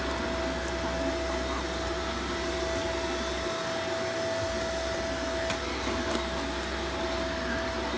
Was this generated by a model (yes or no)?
no